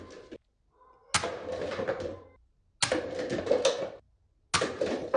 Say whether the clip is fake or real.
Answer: real